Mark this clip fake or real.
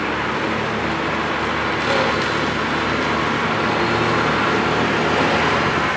real